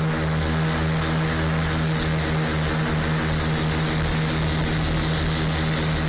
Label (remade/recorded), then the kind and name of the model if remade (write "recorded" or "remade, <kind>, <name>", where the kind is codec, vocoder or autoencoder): recorded